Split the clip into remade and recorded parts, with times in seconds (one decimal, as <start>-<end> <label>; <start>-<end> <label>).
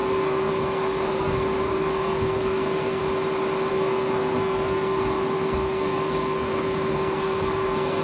0.0-3.0 remade; 3.0-3.7 recorded; 3.7-8.0 remade